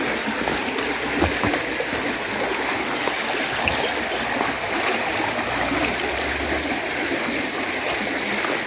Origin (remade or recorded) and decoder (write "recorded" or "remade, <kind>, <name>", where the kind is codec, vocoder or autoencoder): recorded